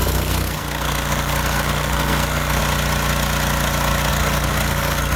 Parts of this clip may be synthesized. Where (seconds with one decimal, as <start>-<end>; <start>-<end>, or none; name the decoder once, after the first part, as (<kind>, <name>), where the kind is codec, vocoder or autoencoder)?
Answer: 0.0-2.6 (codec, SNAC); 4.1-5.2